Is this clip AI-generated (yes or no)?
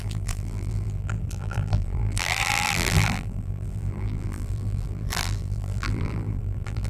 yes